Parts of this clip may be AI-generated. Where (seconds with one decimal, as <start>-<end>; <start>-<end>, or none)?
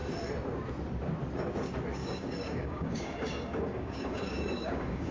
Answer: 2.0-5.1